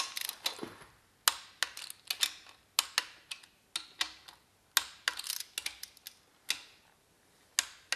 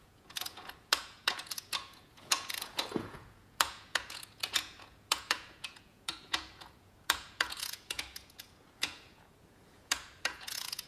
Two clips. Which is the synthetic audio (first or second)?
second